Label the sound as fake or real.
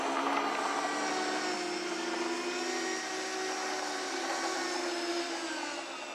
real